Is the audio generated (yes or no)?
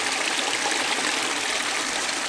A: no